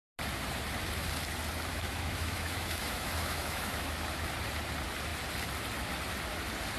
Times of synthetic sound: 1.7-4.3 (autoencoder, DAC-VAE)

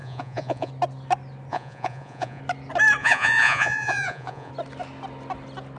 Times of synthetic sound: 0.0-0.7 (vocoder, Vocos); 1.5-2.4; 3.0-4.5

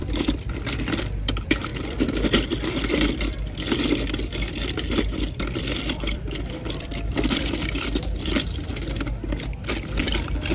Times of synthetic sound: 0.0-1.7 (vocoder, BigVGAN v2); 5.0-8.7; 10.0-10.5

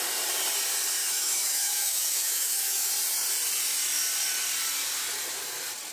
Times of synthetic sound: 1.0-2.9 (autoencoder, DAC-VAE)